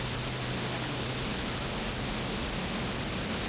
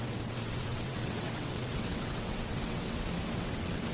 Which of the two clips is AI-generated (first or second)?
second